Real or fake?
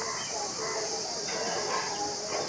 real